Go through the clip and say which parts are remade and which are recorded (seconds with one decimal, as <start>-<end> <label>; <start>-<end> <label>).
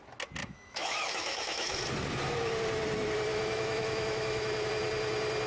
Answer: 0.0-0.4 recorded; 0.4-1.8 remade; 1.8-3.3 recorded; 3.3-4.7 remade; 4.7-5.5 recorded